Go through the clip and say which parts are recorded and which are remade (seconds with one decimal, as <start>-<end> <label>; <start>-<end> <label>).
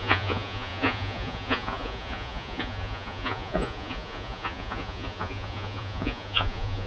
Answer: 0.0-6.9 remade